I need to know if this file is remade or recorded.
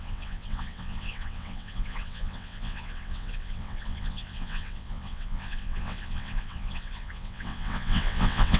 remade